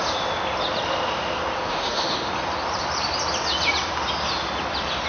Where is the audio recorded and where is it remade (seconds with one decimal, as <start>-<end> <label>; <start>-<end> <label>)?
0.0-1.7 recorded; 1.7-2.3 remade; 2.3-5.1 recorded